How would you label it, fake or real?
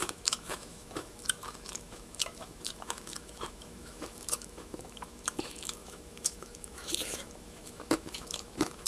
fake